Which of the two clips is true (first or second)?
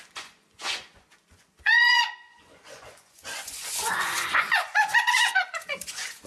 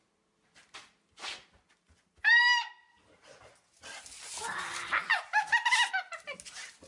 second